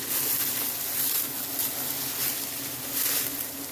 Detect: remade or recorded recorded